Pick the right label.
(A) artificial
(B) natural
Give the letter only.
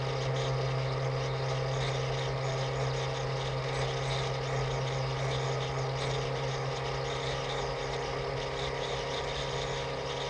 B